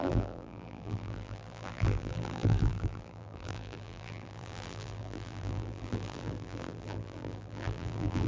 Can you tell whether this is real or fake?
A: fake